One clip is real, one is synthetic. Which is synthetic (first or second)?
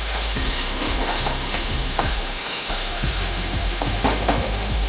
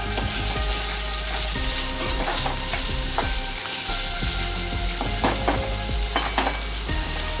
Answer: first